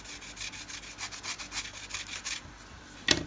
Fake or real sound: real